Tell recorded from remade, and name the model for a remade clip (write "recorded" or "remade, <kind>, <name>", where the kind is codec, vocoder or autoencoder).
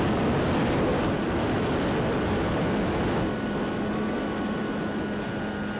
recorded